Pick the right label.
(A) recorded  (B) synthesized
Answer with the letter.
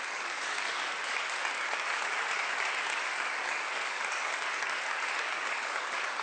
B